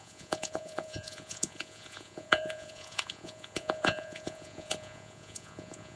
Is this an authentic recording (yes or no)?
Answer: no